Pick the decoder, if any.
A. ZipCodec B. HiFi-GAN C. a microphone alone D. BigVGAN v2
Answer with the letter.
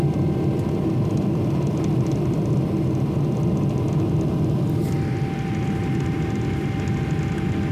C